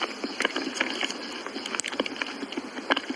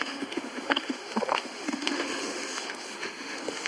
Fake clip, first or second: second